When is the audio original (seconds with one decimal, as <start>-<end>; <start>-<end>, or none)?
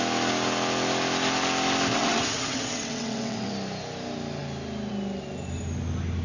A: 0.0-1.9; 3.5-6.2